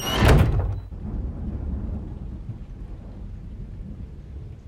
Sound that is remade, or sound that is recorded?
recorded